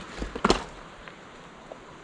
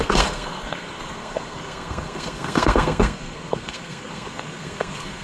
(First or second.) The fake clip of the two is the second